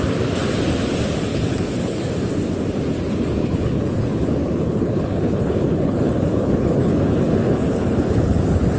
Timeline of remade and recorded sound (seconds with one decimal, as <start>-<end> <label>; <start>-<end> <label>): 0.0-1.3 recorded; 1.3-2.1 remade; 2.1-3.4 recorded; 3.4-8.4 remade; 8.4-8.8 recorded

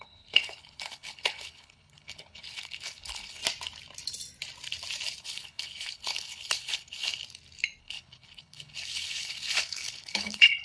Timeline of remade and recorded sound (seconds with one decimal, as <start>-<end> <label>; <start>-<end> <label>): 0.0-3.4 remade; 3.4-5.2 recorded; 5.2-7.2 remade; 7.2-7.8 recorded; 7.8-10.6 remade